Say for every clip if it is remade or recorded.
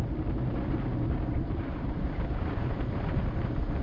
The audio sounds remade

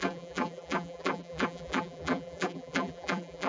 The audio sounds remade